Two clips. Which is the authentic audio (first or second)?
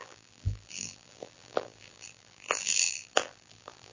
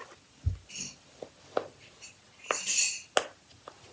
second